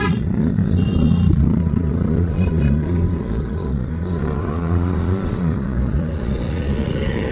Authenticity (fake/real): fake